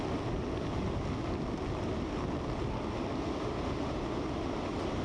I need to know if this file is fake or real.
real